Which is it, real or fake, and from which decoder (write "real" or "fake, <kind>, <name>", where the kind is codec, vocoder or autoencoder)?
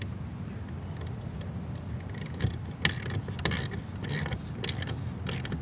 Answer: real